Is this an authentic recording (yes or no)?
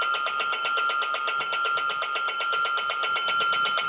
yes